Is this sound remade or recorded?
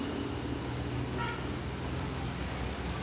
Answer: recorded